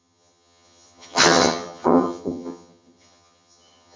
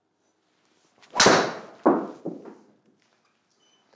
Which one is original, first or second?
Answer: second